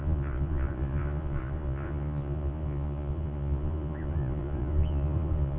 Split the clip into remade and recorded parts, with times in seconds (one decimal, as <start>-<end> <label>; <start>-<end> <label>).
0.0-5.6 remade